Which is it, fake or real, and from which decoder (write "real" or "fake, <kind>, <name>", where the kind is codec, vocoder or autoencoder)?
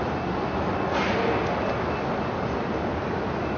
real